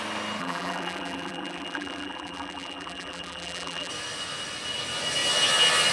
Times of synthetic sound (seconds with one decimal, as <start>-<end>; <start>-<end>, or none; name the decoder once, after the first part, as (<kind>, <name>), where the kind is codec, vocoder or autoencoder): 0.4-3.9 (vocoder, BigVGAN v2)